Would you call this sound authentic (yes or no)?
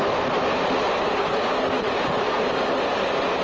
yes